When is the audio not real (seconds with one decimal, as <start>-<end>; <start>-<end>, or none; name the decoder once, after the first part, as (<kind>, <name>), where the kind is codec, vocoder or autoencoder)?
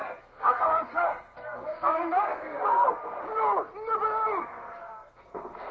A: 0.0-3.2 (codec, SNAC); 4.4-5.7